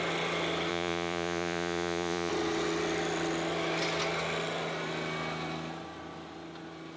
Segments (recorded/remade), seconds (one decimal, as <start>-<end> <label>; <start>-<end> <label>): 0.0-0.7 recorded; 0.7-2.3 remade; 2.3-7.0 recorded